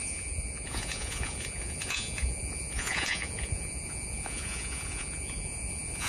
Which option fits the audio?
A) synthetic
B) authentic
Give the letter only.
A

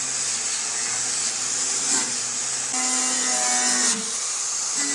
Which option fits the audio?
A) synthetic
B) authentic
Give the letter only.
B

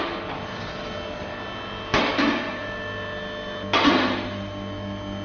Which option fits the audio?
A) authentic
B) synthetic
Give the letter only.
A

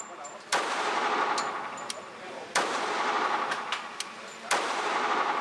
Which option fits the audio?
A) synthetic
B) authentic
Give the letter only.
B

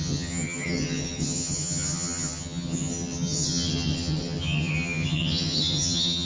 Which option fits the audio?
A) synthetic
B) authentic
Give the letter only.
A